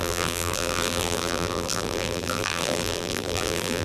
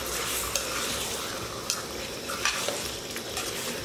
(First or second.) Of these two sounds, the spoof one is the first